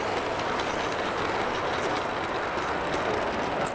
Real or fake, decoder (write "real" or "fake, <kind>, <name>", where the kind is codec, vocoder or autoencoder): real